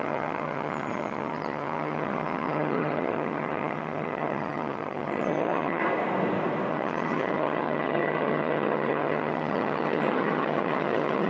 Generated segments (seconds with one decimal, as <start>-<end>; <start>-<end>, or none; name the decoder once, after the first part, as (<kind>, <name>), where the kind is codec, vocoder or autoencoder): 0.0-5.8 (vocoder, HiFi-GAN); 6.7-11.3

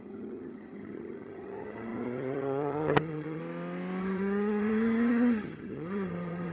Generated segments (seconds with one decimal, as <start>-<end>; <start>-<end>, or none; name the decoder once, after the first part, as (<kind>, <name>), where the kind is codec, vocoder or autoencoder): 0.0-3.4 (vocoder, HiFi-GAN); 4.0-6.5

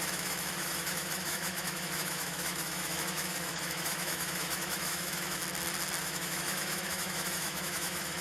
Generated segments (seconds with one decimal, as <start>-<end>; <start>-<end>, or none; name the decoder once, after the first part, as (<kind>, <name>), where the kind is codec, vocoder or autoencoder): 0.0-5.4 (autoencoder, DAC-VAE); 6.0-8.2

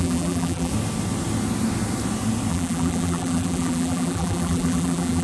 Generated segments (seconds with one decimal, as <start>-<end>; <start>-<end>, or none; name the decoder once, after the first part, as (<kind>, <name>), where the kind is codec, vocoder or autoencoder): 0.0-0.7 (vocoder, BigVGAN v2); 2.5-5.2

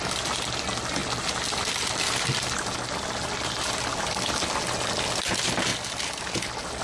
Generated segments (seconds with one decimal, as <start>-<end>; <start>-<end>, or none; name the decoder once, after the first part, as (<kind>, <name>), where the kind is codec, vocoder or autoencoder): none

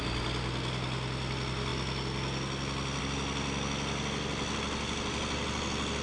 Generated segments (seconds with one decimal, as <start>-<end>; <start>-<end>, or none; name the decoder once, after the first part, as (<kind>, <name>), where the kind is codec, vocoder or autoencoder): none

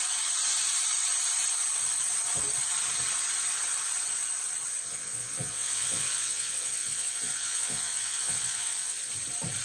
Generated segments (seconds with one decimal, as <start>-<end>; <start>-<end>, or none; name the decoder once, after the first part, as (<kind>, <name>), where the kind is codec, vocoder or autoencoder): 4.8-9.1 (vocoder, Vocos)